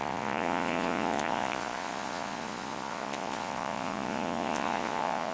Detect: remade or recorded remade